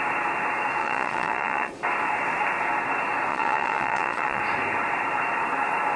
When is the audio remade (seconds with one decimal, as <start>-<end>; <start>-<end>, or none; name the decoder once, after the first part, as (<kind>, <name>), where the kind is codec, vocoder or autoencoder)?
0.8-1.7 (vocoder, Vocos); 3.3-4.4